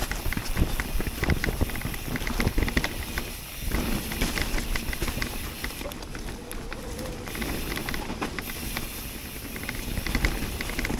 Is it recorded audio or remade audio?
recorded